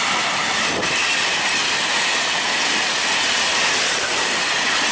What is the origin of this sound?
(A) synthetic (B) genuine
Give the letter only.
B